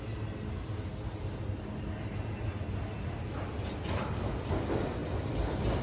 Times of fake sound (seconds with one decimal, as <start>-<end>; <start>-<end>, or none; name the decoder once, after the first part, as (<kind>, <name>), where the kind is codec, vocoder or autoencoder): none

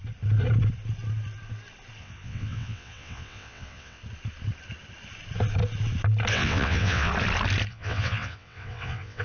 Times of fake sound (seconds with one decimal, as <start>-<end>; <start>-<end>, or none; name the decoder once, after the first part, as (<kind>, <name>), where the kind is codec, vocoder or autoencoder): 2.0-4.0 (vocoder, WaveNeXt); 6.3-7.1; 7.7-9.2

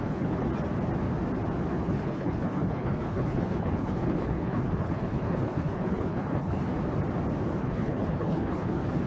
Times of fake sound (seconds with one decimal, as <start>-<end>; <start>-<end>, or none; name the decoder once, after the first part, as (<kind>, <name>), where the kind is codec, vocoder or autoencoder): 0.0-0.5 (codec, HILCodec); 1.7-6.7; 7.6-9.1

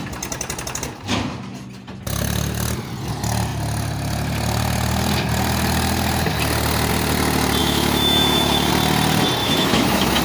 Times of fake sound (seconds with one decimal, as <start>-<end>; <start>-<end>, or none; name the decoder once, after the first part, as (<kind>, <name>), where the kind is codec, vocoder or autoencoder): 7.6-8.7 (autoencoder, DAC-VAE); 9.4-10.2

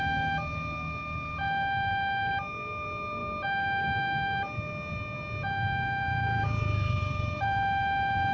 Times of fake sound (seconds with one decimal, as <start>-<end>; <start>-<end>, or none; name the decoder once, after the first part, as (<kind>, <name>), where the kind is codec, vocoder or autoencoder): none